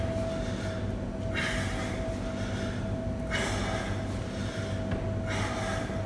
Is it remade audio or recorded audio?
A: recorded